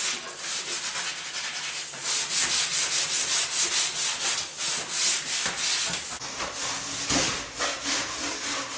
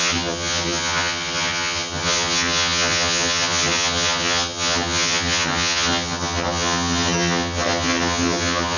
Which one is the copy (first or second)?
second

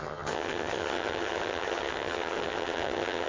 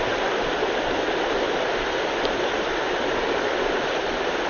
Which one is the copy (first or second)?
first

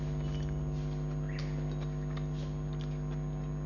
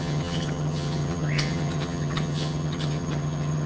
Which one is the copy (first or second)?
second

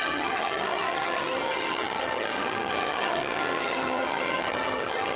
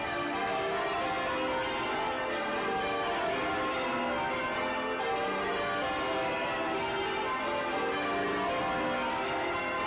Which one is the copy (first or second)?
first